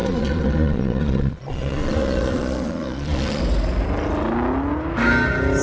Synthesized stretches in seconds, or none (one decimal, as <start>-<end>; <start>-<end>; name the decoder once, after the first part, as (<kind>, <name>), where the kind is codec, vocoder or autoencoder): 0.0-3.4 (vocoder, Vocos)